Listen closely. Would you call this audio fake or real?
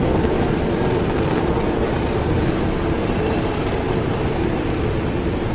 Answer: real